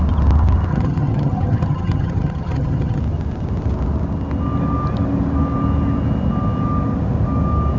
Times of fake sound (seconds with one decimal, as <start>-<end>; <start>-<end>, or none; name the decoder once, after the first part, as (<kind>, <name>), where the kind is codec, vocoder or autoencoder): 0.7-3.0 (vocoder, HiFi-GAN)